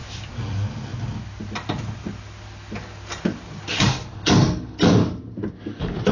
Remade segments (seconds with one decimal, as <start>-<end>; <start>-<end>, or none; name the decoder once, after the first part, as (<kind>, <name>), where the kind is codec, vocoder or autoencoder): 3.7-5.0 (codec, DAC); 5.6-6.1